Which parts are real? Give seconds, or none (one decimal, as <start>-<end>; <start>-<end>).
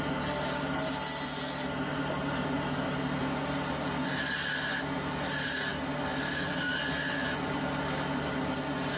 0.0-9.0